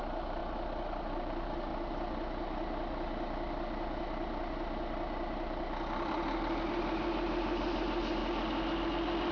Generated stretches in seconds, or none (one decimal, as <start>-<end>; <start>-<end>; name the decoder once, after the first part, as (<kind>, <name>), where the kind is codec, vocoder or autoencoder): 0.0-0.4 (vocoder, BigVGAN v2); 1.0-1.7; 6.6-8.2